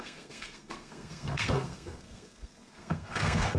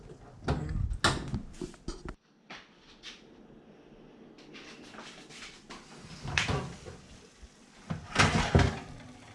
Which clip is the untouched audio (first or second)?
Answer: second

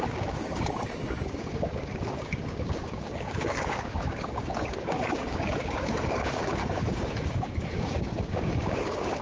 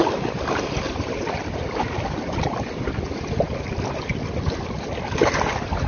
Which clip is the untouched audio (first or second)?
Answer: second